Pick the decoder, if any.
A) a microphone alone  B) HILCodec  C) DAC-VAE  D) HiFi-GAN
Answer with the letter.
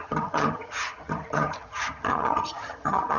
D